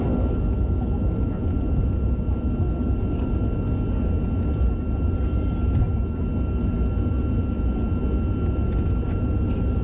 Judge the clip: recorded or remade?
recorded